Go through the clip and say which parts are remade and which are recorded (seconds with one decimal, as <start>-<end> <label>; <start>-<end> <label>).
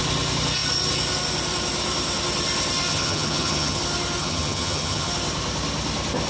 0.0-2.9 recorded; 2.9-3.8 remade; 3.8-4.2 recorded; 4.2-5.1 remade; 5.1-6.3 recorded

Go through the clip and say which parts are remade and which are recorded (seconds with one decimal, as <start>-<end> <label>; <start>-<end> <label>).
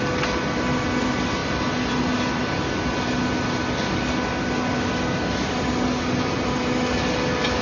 0.0-7.6 recorded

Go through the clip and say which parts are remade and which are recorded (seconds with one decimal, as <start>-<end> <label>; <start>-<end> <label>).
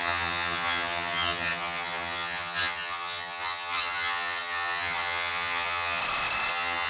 0.0-6.0 remade; 6.0-6.5 recorded; 6.5-6.9 remade